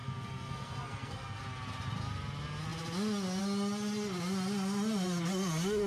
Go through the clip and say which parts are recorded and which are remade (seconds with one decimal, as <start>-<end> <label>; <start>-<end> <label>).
0.0-1.4 remade; 1.4-5.9 recorded